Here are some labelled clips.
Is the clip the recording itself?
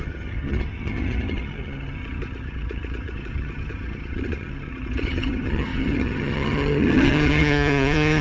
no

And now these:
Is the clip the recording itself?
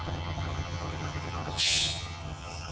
no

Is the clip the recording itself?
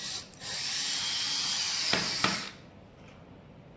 yes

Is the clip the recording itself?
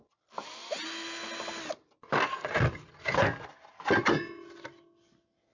yes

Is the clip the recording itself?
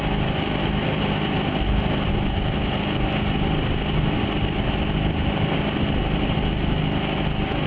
yes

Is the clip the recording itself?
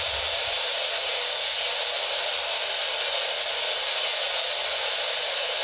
yes